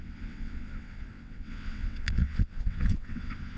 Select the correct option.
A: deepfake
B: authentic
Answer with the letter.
A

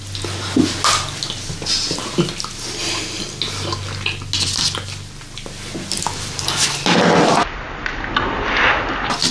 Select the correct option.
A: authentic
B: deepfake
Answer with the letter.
A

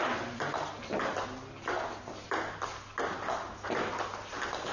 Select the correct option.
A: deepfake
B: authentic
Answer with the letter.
B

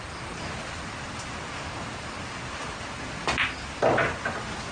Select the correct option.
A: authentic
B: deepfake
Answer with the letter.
A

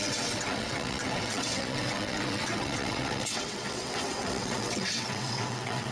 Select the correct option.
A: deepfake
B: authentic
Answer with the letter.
A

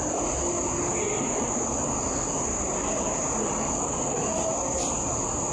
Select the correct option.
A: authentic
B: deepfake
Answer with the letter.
A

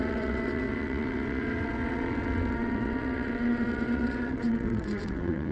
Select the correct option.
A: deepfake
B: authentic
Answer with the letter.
A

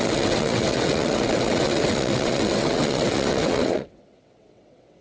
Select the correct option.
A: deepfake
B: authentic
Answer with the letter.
A